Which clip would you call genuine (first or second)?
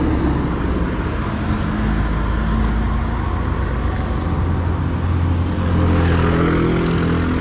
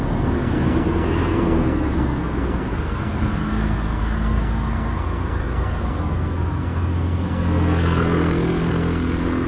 first